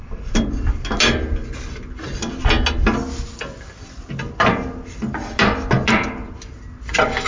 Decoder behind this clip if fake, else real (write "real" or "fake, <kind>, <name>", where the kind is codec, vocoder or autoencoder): real